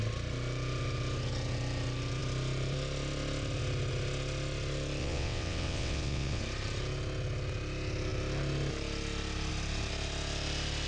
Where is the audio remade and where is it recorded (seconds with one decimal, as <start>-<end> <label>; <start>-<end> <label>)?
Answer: 0.0-5.0 recorded; 5.0-6.4 remade; 6.4-10.9 recorded